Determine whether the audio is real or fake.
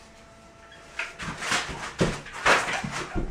real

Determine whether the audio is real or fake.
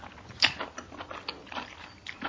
real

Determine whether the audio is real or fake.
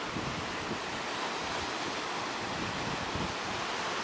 real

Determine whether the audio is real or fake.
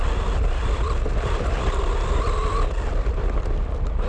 fake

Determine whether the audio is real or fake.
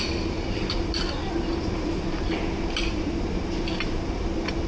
real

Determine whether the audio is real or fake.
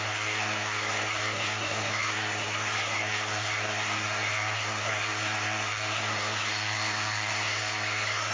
fake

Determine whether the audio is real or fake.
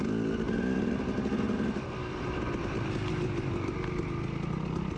real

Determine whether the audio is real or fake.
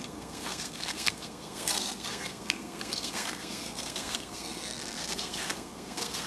fake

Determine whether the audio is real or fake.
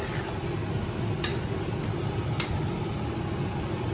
real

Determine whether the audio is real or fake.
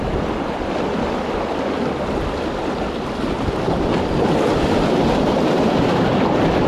real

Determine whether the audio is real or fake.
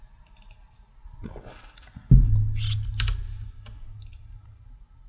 real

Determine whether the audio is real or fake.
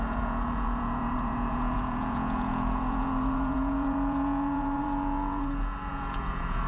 fake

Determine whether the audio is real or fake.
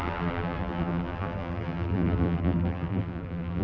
fake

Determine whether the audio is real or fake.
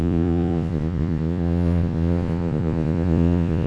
fake